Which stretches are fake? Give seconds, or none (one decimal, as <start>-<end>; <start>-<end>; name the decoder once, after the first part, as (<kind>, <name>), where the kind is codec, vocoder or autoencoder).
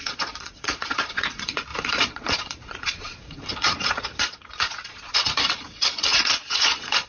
0.0-7.1 (vocoder, Vocos)